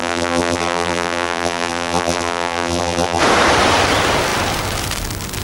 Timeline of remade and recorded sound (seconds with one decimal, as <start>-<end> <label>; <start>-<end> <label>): 0.0-3.2 remade; 3.2-5.4 recorded